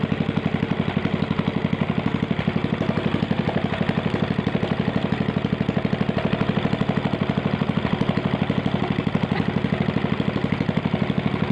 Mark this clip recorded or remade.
recorded